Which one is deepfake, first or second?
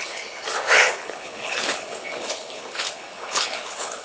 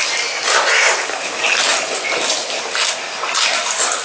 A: first